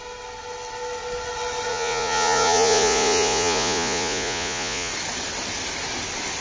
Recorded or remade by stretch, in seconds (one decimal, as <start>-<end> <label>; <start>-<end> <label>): 0.0-1.7 recorded; 1.7-4.9 remade; 4.9-6.4 recorded